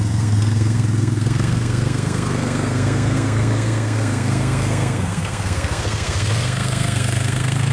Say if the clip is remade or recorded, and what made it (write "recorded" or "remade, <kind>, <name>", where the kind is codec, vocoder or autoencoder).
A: remade, codec, SNAC